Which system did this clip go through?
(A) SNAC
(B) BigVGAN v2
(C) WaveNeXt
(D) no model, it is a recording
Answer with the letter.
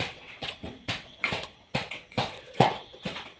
C